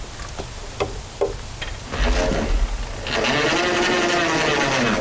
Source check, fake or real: real